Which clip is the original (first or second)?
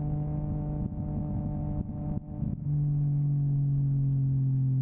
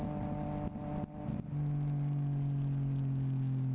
second